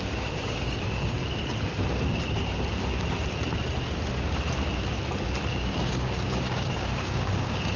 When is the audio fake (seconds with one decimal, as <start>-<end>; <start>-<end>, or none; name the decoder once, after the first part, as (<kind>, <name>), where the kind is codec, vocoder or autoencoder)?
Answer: 0.0-1.2 (codec, DAC); 5.5-7.8